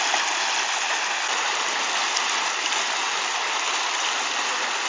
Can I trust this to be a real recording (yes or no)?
yes